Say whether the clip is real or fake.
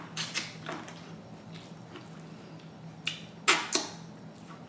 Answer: real